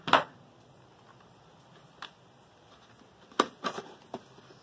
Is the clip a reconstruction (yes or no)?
no